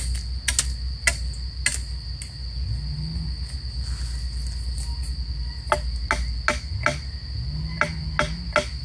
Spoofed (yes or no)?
no